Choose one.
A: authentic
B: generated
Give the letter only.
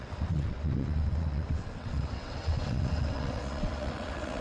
B